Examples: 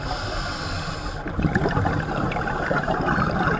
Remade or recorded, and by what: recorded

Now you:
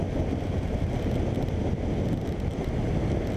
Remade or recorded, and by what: recorded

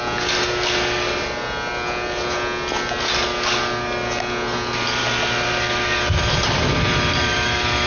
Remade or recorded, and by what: recorded